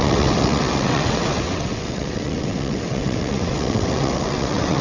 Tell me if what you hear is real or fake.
fake